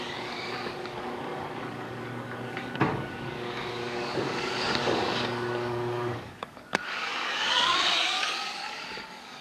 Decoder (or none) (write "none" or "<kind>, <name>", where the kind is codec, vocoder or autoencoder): codec, DAC